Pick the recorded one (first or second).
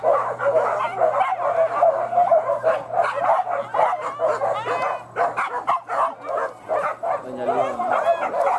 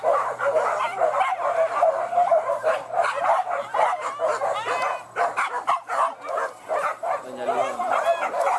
first